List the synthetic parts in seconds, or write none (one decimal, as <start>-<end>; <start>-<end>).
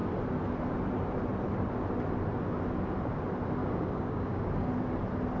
3.6-4.7